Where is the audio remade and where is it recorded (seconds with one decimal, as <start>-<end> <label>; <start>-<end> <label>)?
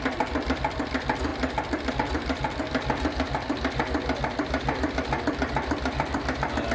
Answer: 0.0-6.7 recorded